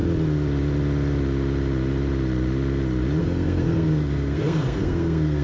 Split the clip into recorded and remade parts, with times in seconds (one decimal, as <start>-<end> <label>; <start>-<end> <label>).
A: 0.0-3.2 recorded; 3.2-5.4 remade